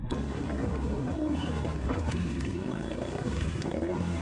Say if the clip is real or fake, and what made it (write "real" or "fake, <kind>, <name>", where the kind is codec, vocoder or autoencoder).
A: fake, codec, SNAC